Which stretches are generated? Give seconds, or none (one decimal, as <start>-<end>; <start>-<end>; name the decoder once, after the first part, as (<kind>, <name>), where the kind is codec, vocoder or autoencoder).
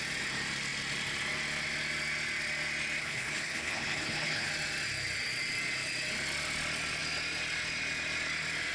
3.0-4.5 (codec, HILCodec)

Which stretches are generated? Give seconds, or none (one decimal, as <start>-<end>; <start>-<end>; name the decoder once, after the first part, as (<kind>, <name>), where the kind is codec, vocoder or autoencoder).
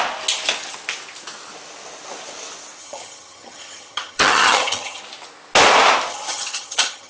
2.8-5.0 (vocoder, HiFi-GAN); 6.1-7.1